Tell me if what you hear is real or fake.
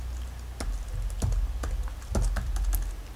real